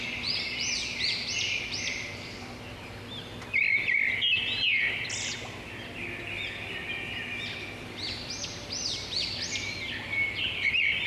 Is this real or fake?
real